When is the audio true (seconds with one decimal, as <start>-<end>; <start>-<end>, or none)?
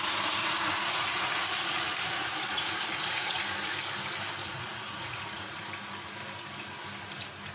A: 0.0-0.4; 3.4-4.4; 5.7-7.5